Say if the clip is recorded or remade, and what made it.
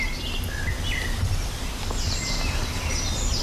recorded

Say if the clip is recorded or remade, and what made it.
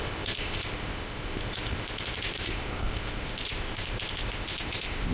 remade, codec, ZipCodec